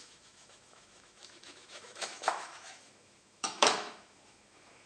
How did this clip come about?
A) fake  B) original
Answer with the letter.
A